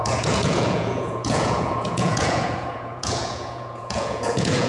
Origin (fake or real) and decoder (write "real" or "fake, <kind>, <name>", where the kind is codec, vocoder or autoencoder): fake, vocoder, Vocos